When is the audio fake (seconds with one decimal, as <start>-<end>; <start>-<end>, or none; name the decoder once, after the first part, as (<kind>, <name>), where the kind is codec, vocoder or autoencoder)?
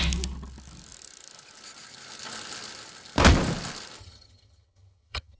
4.0-5.4 (vocoder, HiFi-GAN)